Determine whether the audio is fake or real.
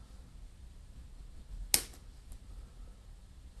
real